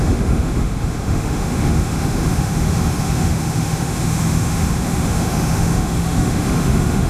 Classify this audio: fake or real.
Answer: fake